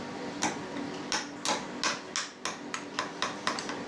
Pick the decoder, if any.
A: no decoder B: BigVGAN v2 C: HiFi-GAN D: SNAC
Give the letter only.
A